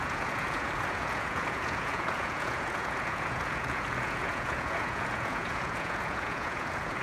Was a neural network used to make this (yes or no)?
yes